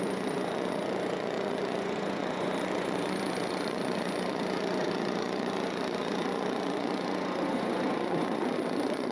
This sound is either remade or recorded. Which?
remade